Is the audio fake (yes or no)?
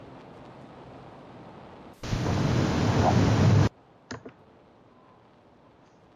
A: no